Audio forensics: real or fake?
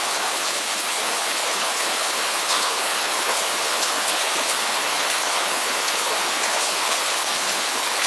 fake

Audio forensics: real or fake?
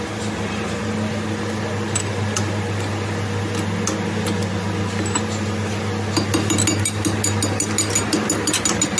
real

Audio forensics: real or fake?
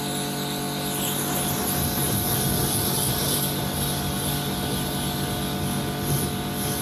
real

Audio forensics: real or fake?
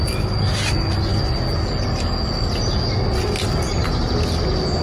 real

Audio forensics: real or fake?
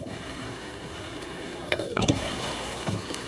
fake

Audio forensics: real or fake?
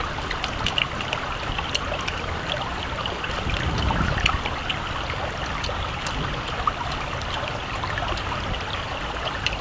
real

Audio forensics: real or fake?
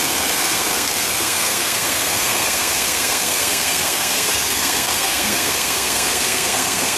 fake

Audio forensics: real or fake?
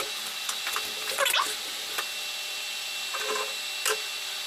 real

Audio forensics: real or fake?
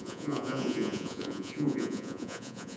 fake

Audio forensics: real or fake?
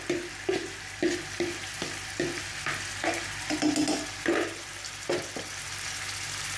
real